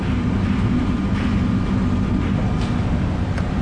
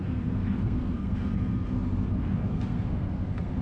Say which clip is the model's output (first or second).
second